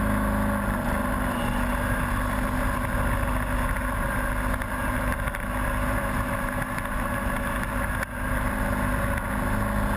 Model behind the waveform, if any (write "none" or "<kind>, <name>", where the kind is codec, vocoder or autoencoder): none